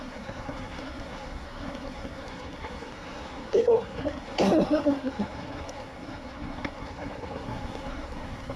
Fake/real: fake